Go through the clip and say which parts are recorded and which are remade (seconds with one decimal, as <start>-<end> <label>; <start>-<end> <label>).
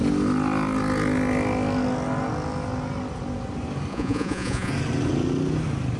0.0-3.9 recorded; 3.9-4.7 remade; 4.7-6.0 recorded